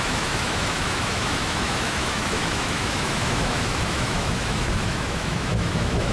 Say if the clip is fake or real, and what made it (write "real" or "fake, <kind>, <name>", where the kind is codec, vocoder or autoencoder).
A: fake, autoencoder, DAC-VAE